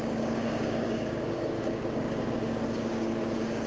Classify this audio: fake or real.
fake